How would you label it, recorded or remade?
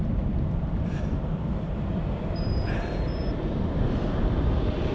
remade